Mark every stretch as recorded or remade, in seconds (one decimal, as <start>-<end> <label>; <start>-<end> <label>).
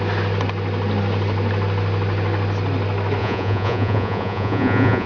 0.0-3.2 recorded; 3.2-5.1 remade